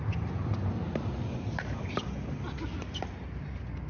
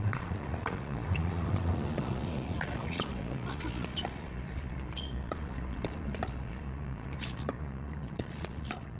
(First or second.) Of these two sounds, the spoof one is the second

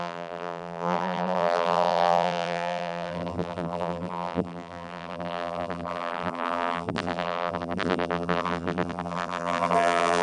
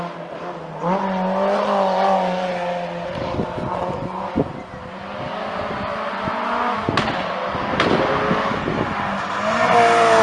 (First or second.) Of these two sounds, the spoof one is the first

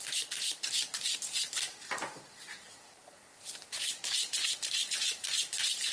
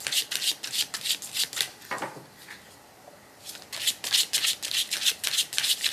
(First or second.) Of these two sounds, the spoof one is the first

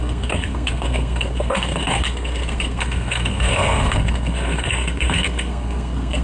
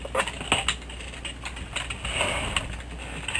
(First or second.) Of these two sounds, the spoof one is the first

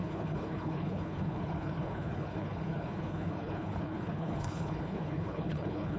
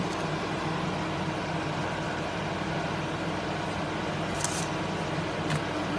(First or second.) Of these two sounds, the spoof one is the first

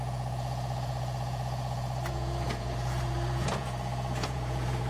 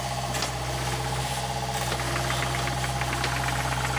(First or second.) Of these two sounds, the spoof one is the first